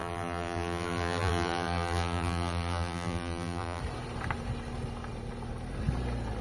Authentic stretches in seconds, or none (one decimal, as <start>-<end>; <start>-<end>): 3.8-6.4